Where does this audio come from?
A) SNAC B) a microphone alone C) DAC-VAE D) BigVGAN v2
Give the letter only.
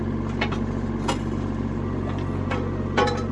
B